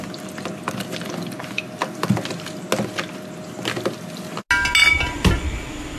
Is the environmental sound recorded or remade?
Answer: recorded